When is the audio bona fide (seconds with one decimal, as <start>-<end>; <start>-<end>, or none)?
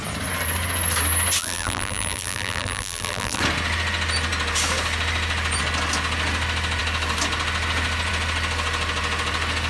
0.0-1.4; 3.4-9.7